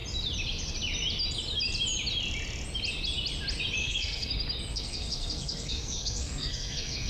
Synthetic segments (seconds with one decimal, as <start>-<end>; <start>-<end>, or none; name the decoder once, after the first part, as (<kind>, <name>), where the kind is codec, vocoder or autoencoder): 3.8-4.3 (codec, SNAC); 4.7-7.1